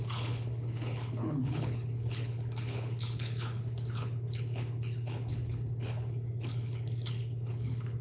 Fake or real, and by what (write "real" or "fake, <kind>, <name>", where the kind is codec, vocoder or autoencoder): fake, codec, HILCodec